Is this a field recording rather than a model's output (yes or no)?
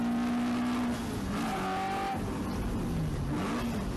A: yes